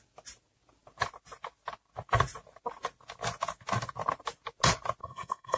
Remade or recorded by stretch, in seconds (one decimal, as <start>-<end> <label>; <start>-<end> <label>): 0.0-5.0 recorded; 5.0-5.6 remade

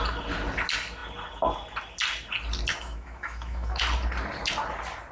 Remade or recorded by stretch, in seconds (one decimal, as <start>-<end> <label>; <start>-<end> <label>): 0.0-2.7 recorded; 2.7-3.8 remade; 3.8-5.1 recorded

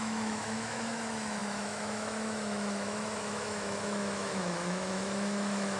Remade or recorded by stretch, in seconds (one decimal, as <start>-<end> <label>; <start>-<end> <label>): 0.0-5.8 remade

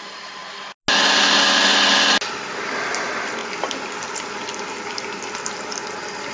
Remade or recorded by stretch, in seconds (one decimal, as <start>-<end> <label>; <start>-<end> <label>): 0.0-6.3 recorded

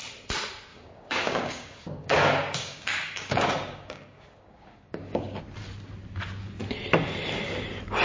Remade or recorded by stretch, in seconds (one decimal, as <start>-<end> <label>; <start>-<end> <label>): 0.0-0.7 recorded; 0.7-5.4 remade; 5.4-8.0 recorded

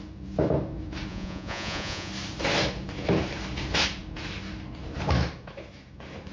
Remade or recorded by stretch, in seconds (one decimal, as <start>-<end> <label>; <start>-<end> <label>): 0.0-1.1 recorded; 1.1-2.1 remade; 2.1-6.3 recorded

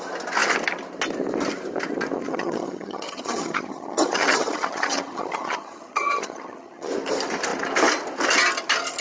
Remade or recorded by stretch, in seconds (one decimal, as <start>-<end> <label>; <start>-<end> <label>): 0.0-2.2 recorded; 2.2-6.9 remade; 6.9-9.0 recorded

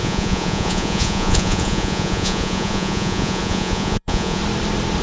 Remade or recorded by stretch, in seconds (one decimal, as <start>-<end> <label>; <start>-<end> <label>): 0.0-4.4 remade; 4.4-5.0 recorded